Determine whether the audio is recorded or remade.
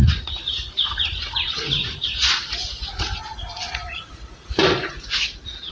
remade